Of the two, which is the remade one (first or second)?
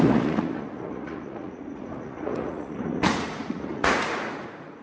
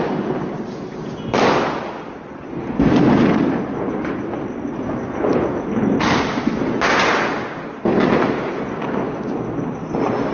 first